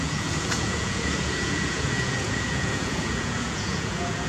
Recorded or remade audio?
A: remade